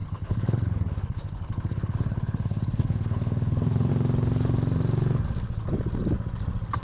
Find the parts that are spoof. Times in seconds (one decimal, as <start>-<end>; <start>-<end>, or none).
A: 0.0-3.9